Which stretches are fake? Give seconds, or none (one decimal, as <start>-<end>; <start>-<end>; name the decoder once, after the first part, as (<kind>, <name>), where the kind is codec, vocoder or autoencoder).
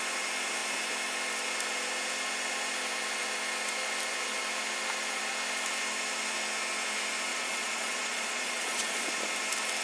7.3-9.1 (vocoder, Vocos)